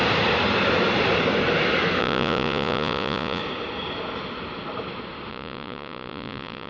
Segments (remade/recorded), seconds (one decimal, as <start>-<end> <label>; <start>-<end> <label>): 0.0-2.0 recorded; 2.0-3.4 remade; 3.4-5.3 recorded; 5.3-6.7 remade